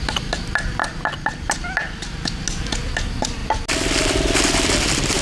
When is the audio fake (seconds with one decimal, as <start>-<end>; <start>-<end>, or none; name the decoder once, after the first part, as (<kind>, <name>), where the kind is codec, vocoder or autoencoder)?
none